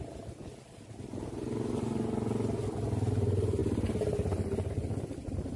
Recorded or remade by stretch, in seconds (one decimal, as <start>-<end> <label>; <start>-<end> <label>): 0.0-5.6 recorded